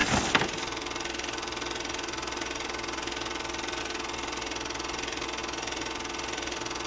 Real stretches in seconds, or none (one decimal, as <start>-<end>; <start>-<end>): 0.0-6.9

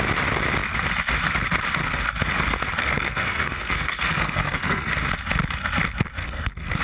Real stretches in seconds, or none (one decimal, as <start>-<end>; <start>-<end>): 0.0-2.8; 4.9-6.2

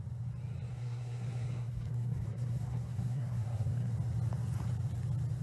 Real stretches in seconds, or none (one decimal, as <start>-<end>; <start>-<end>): 0.0-0.7; 3.9-5.4

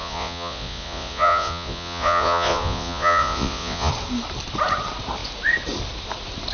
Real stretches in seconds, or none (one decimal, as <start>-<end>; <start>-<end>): 3.9-6.5

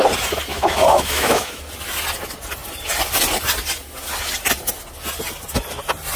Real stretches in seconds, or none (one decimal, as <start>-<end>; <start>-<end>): 0.0-0.5; 1.6-6.2

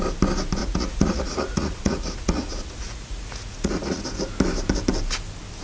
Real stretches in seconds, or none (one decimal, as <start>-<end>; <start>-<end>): 0.0-0.6; 4.0-5.6